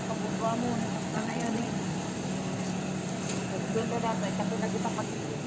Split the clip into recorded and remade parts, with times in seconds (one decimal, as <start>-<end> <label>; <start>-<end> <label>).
0.0-1.1 recorded; 1.1-1.7 remade; 1.7-5.5 recorded